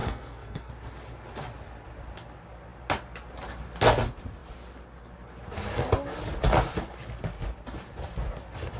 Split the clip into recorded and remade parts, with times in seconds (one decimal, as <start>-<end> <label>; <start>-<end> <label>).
0.0-0.7 remade; 0.7-8.8 recorded